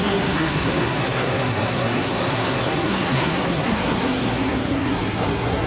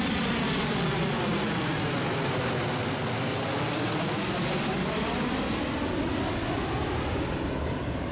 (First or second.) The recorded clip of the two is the second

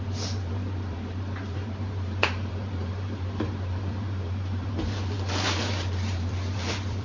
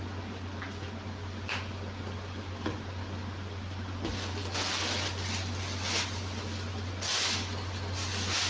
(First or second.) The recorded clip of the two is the second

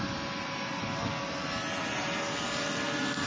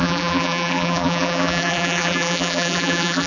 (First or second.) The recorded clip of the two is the first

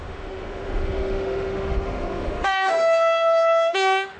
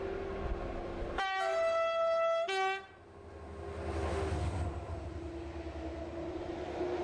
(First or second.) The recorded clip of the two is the second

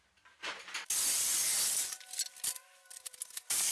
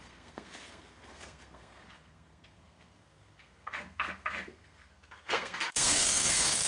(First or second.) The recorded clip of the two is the first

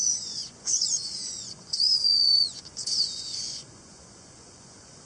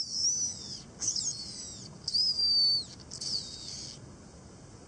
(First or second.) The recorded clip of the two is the second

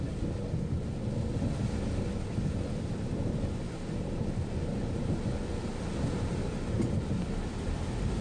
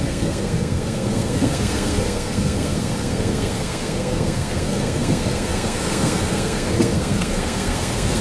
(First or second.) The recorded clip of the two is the first